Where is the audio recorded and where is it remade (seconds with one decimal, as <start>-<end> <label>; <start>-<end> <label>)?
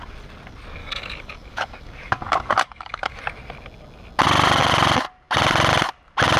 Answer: 0.0-0.8 recorded; 0.8-3.2 remade; 3.2-6.4 recorded